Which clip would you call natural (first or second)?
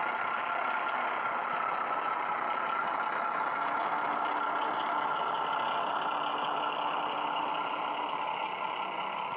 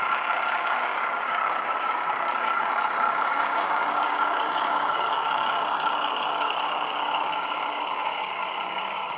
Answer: first